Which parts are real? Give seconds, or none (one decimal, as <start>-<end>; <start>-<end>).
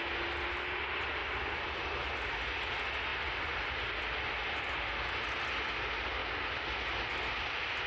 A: 0.0-7.9